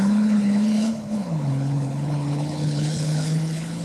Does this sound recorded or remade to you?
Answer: remade